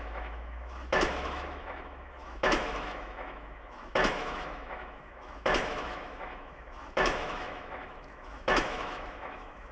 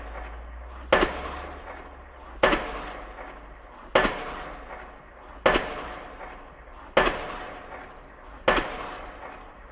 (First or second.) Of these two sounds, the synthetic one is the first